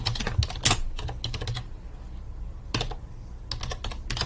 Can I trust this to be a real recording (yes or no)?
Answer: yes